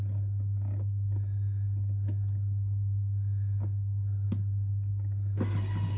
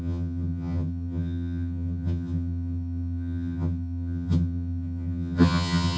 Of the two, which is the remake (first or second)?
second